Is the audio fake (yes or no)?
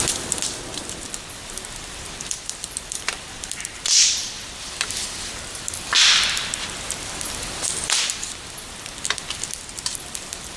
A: yes